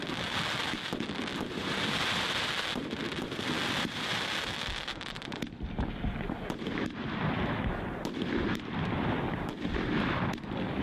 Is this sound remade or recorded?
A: remade